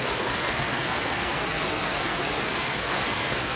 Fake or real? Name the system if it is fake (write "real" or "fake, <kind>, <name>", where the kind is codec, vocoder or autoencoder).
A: fake, codec, SNAC